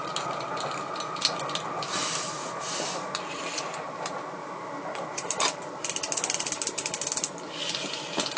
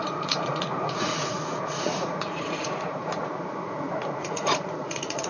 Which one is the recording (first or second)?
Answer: first